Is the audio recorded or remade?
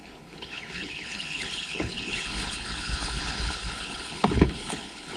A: remade